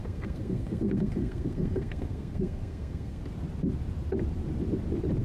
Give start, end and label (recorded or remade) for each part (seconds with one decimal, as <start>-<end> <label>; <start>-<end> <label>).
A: 0.0-3.2 remade; 3.2-5.2 recorded